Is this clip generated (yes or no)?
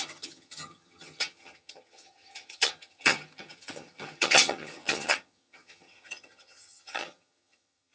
yes